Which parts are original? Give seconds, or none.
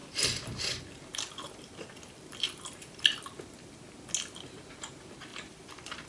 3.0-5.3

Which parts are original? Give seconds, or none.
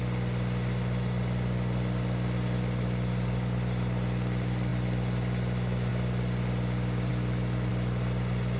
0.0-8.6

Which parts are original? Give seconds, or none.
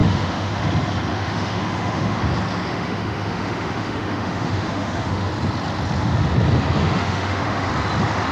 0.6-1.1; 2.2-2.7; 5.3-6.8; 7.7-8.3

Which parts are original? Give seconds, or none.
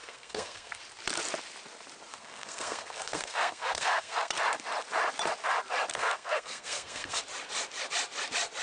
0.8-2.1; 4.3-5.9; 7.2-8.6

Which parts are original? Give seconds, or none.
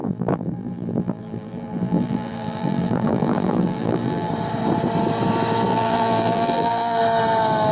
4.3-5.7; 7.0-7.7